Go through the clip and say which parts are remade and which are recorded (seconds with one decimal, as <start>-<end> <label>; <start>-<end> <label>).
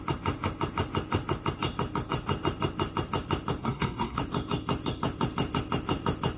0.0-3.6 recorded; 3.6-4.2 remade; 4.2-6.4 recorded